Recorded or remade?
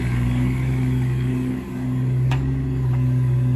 remade